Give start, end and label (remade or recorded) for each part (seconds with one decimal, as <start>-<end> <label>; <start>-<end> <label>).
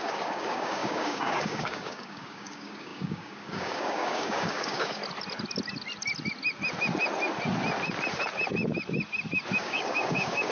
0.0-5.0 remade; 5.0-9.6 recorded; 9.6-10.5 remade